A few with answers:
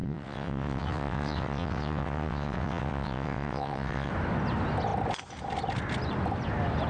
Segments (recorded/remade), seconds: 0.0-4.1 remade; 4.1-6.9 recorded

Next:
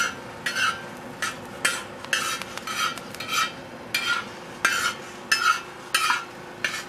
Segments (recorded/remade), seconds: 0.0-6.9 recorded

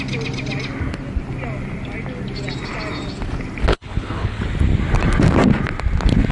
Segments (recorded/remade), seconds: 0.0-3.7 recorded; 3.7-4.4 remade; 4.4-6.3 recorded

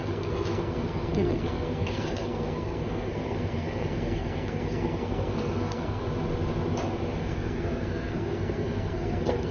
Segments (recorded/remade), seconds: 0.0-6.0 remade; 6.0-7.2 recorded; 7.2-9.5 remade

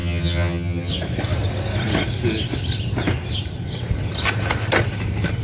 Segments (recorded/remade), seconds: 0.0-0.9 remade; 0.9-5.4 recorded

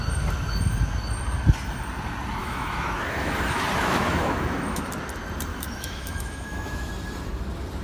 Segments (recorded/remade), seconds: 0.0-2.4 recorded; 2.4-4.8 remade; 4.8-5.5 recorded; 5.5-6.9 remade; 6.9-7.8 recorded

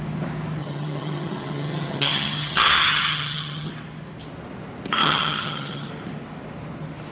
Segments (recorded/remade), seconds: 0.0-0.6 recorded; 0.6-3.7 remade; 3.7-5.0 recorded; 5.0-5.9 remade; 5.9-7.1 recorded